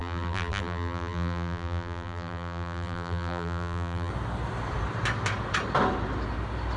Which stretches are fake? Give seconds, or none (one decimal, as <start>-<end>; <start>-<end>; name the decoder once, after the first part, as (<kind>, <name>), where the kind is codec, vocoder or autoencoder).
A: 0.0-4.1 (vocoder, BigVGAN v2)